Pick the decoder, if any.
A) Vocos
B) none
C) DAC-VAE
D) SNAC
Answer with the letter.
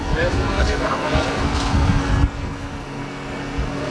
D